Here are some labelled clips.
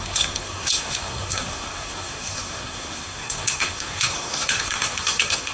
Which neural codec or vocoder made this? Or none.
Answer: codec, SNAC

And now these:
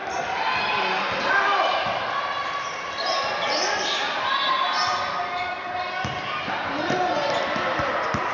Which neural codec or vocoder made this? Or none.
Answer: none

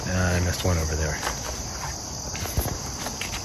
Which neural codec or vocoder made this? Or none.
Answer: none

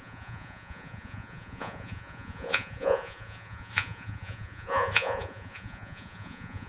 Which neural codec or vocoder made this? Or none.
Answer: vocoder, Vocos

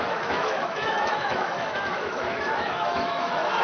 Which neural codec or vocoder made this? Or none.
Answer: autoencoder, DAC-VAE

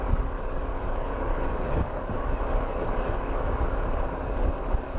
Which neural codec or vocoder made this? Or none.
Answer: codec, DAC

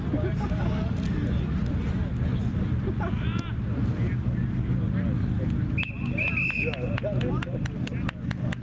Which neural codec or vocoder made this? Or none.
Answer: none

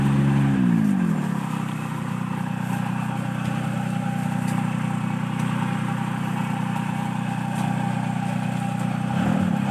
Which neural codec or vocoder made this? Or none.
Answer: none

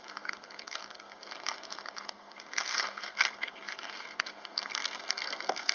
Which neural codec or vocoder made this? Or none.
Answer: codec, SNAC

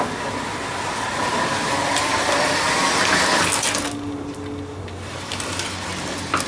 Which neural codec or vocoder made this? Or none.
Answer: none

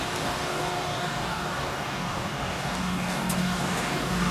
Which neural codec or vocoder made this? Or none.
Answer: codec, DAC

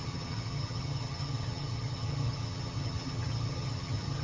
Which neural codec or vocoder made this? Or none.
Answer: vocoder, HiFi-GAN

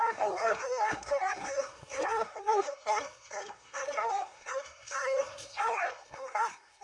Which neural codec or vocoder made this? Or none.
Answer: codec, SNAC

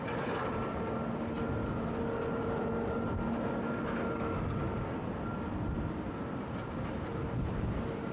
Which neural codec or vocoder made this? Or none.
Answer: none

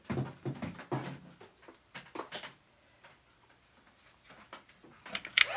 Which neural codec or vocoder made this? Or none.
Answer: none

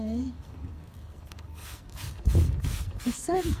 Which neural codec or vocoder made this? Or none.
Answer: codec, SNAC